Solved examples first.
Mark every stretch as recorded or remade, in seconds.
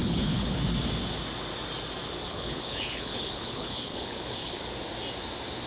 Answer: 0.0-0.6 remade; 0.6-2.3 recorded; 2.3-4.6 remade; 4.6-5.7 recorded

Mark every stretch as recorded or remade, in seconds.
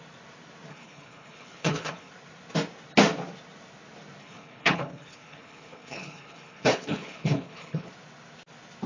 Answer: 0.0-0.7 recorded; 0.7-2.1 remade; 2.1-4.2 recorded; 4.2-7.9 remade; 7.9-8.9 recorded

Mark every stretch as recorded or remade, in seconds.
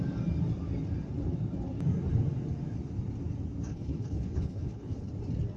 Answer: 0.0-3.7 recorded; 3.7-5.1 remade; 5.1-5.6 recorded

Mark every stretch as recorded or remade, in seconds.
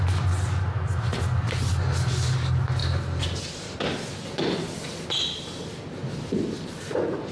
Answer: 0.0-7.3 recorded